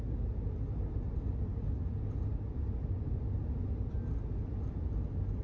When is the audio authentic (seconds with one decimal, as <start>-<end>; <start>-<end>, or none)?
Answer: 0.0-5.4